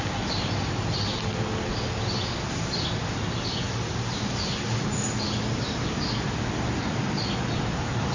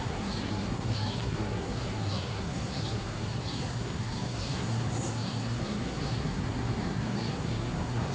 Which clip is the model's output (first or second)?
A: second